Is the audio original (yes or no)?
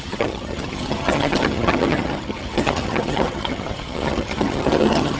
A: no